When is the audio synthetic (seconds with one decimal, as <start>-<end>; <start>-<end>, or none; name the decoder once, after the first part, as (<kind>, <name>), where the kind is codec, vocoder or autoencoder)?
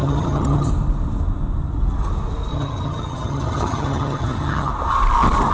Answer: 0.0-0.7 (vocoder, HiFi-GAN); 2.5-4.7